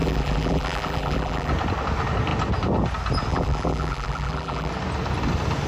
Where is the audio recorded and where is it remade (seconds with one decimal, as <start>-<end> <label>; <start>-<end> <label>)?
0.0-1.5 remade; 1.5-3.3 recorded; 3.3-4.7 remade; 4.7-5.7 recorded